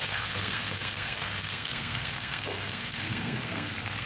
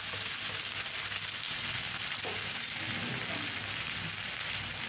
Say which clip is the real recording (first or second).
second